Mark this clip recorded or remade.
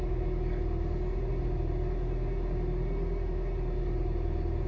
recorded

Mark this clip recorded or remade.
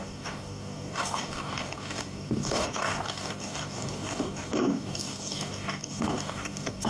remade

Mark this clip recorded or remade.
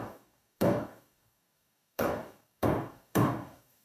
remade